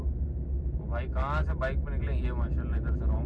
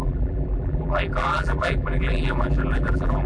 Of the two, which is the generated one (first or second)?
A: second